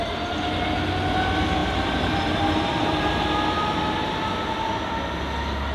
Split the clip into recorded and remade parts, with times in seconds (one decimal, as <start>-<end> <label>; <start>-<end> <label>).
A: 0.0-1.6 recorded; 1.6-3.0 remade; 3.0-5.7 recorded